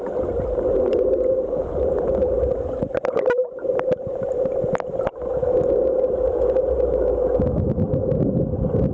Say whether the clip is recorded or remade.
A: recorded